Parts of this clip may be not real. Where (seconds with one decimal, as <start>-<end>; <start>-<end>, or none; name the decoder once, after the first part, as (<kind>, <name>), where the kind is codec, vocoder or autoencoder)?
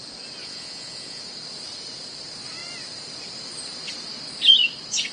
0.4-1.2 (vocoder, Vocos)